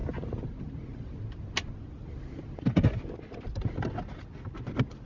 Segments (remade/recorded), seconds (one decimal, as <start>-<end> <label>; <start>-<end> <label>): 0.0-5.1 recorded